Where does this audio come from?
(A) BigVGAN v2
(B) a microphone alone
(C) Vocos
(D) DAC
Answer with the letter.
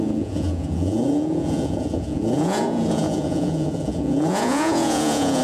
C